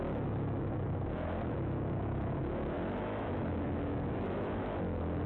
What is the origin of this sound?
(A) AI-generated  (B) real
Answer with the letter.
A